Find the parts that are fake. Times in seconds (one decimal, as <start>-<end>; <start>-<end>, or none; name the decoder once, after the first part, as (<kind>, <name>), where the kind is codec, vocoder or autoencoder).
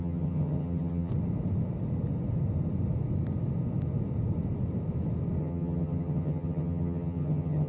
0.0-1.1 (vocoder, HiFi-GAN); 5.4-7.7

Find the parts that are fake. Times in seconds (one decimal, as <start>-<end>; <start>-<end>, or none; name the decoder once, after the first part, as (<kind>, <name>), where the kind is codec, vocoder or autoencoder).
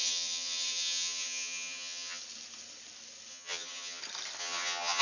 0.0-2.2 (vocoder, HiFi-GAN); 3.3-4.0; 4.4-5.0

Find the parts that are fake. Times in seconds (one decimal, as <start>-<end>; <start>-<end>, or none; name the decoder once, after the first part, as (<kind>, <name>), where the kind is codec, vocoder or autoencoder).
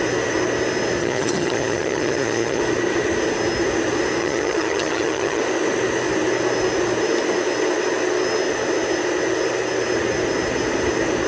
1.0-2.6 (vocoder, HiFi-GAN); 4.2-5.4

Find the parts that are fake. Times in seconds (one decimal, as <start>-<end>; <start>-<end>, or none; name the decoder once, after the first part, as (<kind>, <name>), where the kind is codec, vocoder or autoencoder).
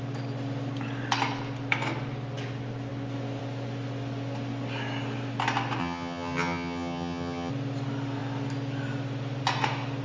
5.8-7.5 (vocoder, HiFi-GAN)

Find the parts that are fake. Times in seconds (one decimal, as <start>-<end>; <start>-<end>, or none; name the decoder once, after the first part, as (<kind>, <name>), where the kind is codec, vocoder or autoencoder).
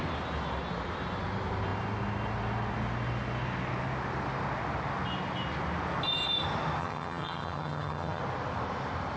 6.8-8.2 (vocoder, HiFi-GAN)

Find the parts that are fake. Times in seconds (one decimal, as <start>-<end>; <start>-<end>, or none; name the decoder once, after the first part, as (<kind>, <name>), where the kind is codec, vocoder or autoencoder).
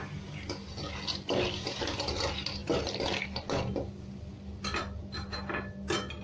none